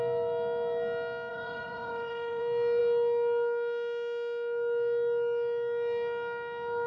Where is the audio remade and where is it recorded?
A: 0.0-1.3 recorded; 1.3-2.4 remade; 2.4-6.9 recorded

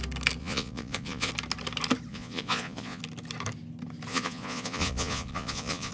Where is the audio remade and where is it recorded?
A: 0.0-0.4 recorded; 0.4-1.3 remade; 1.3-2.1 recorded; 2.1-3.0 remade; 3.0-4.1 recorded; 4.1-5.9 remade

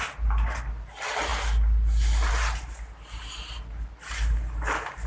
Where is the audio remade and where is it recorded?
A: 0.0-5.1 recorded

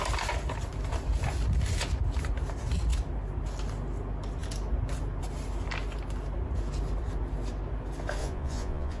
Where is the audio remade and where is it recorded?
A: 0.0-8.2 recorded; 8.2-9.0 remade

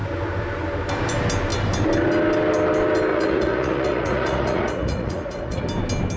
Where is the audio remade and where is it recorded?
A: 0.0-3.1 recorded; 3.1-5.6 remade; 5.6-6.2 recorded

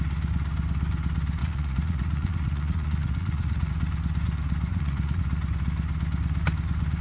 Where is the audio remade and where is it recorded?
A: 0.0-1.4 recorded; 1.4-3.7 remade; 3.7-4.7 recorded; 4.7-5.2 remade; 5.2-7.0 recorded